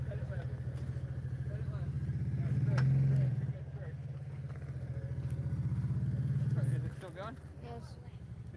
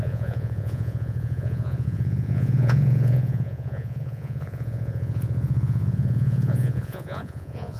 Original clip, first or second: first